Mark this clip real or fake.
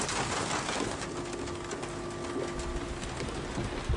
real